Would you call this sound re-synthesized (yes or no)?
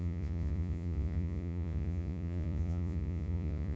yes